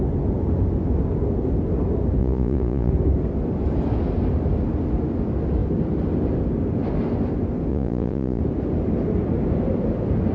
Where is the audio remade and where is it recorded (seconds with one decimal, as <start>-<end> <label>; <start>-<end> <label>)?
0.0-2.2 recorded; 2.2-2.9 remade; 2.9-7.7 recorded; 7.7-8.4 remade; 8.4-10.3 recorded